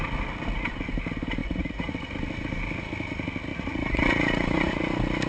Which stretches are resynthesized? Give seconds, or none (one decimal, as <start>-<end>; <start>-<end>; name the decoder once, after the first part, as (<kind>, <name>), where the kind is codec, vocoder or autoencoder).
1.4-1.9 (vocoder, Vocos); 3.5-4.8